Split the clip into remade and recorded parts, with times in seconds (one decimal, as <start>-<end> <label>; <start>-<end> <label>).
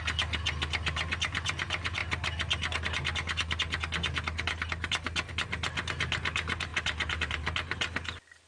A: 0.0-8.5 recorded